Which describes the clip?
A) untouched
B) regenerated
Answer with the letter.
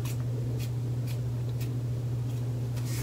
A